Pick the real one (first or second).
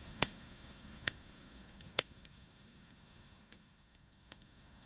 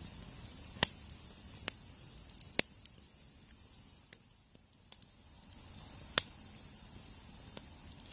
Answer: second